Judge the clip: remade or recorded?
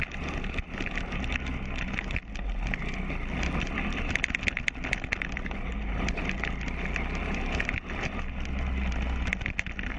recorded